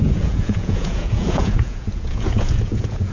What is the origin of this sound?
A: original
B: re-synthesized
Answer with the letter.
B